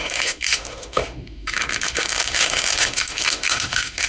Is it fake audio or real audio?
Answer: fake